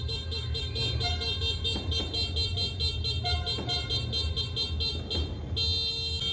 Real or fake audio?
real